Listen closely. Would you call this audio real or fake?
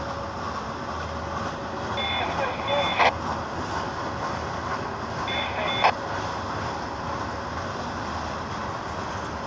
real